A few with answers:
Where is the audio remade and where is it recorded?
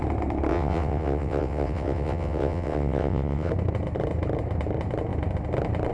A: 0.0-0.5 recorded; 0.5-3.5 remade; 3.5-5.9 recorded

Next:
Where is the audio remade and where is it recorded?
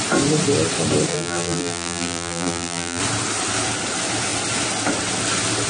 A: 0.0-1.1 recorded; 1.1-3.0 remade; 3.0-5.7 recorded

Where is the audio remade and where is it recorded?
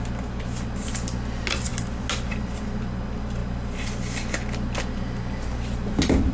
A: 0.0-6.3 recorded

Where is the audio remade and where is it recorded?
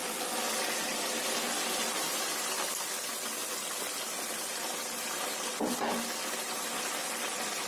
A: 0.0-7.7 recorded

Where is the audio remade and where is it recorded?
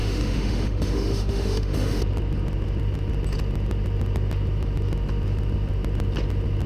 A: 0.0-2.0 remade; 2.0-6.7 recorded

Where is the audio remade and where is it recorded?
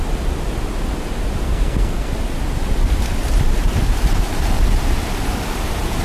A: 0.0-1.4 recorded; 1.4-2.1 remade; 2.1-6.0 recorded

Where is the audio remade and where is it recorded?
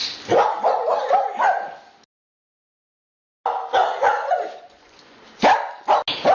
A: 0.0-3.8 recorded; 3.8-5.2 remade; 5.2-6.3 recorded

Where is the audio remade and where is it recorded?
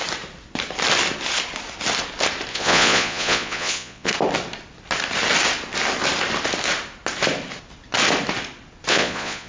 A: 0.0-2.5 recorded; 2.5-4.1 remade; 4.1-8.9 recorded; 8.9-9.5 remade